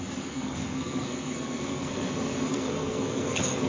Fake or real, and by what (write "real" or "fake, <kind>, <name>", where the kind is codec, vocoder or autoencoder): fake, codec, SNAC